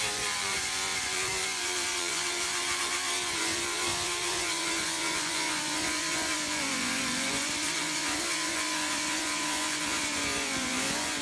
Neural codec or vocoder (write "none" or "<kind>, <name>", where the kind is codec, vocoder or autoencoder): vocoder, Vocos